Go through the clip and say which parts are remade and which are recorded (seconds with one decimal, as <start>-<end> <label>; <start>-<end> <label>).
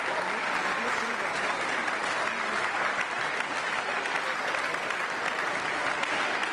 0.0-6.5 recorded